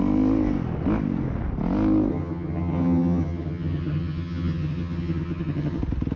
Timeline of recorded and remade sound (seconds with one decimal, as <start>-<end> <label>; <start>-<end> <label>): 0.0-2.1 recorded; 2.1-5.8 remade; 5.8-6.2 recorded